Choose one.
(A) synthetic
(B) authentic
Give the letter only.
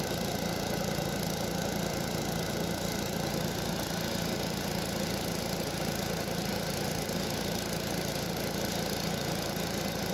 B